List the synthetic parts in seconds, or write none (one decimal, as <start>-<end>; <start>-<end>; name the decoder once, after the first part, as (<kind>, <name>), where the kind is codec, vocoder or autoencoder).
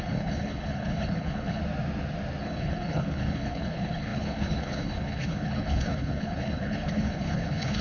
0.0-1.6 (codec, HILCodec); 2.4-7.8